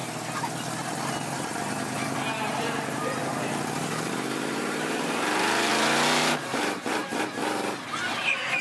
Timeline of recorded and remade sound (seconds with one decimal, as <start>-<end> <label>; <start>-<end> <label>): 0.0-2.5 recorded; 2.5-5.7 remade; 5.7-6.2 recorded; 6.2-7.0 remade; 7.0-8.6 recorded